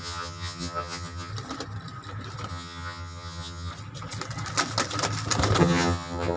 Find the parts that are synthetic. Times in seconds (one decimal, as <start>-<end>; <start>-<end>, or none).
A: 0.0-1.3; 2.5-3.7; 5.6-6.4